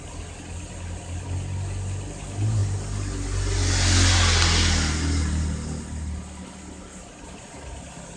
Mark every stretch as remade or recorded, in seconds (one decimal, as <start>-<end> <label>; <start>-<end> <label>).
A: 0.0-8.2 recorded